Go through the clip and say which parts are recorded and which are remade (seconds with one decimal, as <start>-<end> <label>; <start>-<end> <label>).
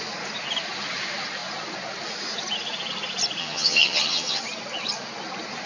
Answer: 0.0-3.4 recorded; 3.4-4.4 remade; 4.4-5.7 recorded